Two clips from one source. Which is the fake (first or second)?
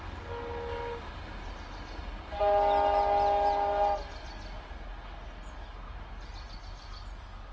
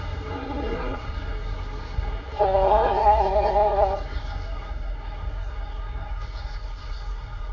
second